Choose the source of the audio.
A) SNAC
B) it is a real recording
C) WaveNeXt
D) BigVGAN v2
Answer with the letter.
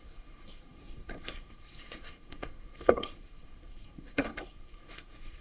A